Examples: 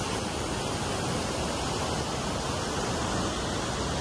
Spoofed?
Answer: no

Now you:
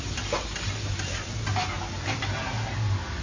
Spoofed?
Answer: no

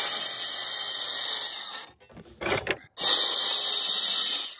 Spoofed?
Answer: no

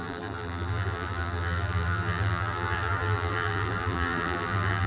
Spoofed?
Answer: yes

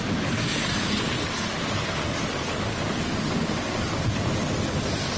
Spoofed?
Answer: no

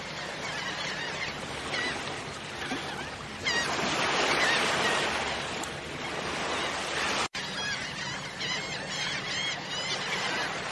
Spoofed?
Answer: no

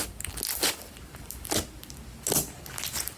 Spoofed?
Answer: no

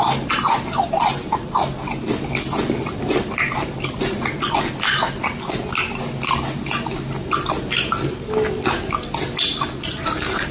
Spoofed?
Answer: no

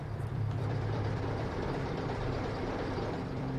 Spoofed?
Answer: yes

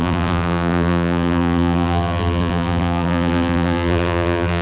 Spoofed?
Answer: yes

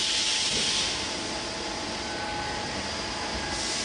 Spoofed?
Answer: no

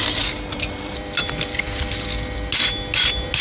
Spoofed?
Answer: yes